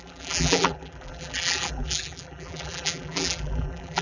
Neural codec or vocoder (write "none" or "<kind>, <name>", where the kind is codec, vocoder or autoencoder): vocoder, BigVGAN v2